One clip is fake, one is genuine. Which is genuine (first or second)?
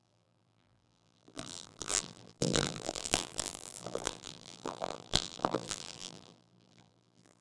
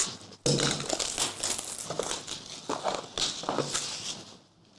second